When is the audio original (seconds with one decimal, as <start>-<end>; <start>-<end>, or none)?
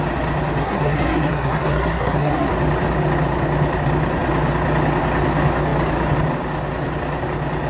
0.0-0.6; 2.5-7.7